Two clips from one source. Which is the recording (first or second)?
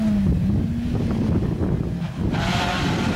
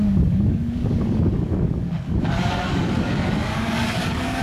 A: first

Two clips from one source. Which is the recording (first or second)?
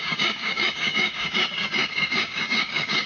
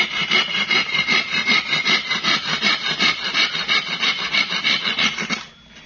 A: second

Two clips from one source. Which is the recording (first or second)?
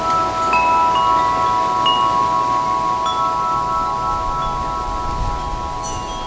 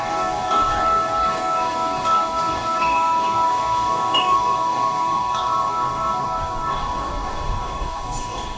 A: first